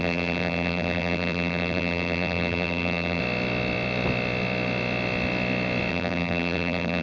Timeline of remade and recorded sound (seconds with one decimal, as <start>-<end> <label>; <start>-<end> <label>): 0.0-3.2 remade; 3.2-5.9 recorded; 5.9-7.0 remade